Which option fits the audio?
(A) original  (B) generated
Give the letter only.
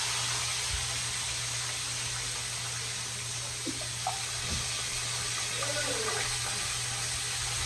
A